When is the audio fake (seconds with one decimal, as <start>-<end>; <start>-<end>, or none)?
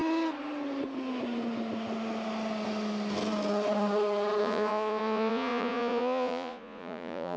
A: 4.4-7.4